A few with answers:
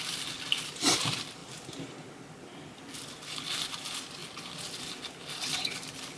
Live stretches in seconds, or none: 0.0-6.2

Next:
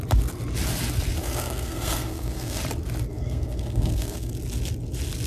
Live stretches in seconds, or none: 0.0-1.2; 2.6-3.1; 4.3-5.3

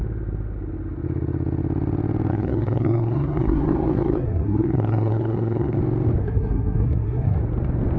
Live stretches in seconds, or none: 0.0-2.3; 5.8-6.2; 7.4-8.0

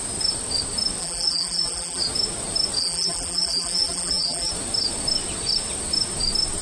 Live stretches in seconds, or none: 0.0-1.0; 2.0-2.8; 4.5-6.6

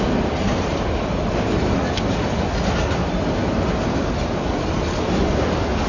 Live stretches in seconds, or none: 0.0-5.9

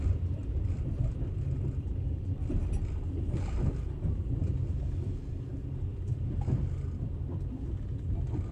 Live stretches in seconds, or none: 0.0-0.4; 3.9-8.5

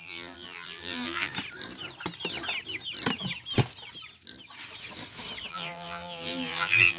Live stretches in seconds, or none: 1.3-5.5

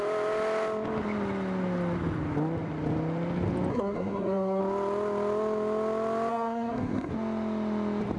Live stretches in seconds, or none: 0.0-3.7; 4.6-6.3; 7.1-8.2